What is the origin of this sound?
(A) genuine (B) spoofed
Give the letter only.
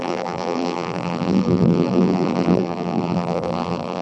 B